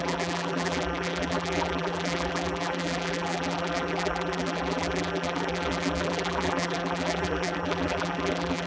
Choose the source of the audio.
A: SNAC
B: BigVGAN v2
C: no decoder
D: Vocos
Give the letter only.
B